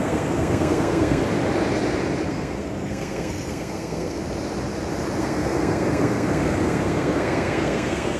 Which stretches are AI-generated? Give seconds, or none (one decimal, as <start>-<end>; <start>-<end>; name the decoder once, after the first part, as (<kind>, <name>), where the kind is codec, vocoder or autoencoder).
0.0-1.2 (codec, SNAC); 2.3-4.2; 5.2-8.2